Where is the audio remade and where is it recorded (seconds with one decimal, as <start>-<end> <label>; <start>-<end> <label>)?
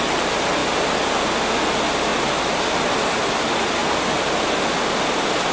0.0-5.5 recorded